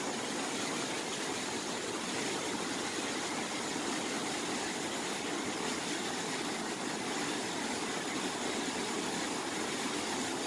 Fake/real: real